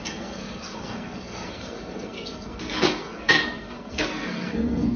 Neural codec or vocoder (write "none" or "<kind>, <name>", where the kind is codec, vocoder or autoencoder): codec, SNAC